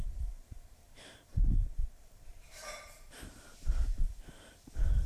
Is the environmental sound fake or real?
fake